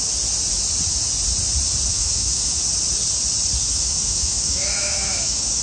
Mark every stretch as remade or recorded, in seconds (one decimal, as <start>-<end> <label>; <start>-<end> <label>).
0.0-1.9 recorded; 1.9-2.6 remade; 2.6-3.6 recorded; 3.6-5.6 remade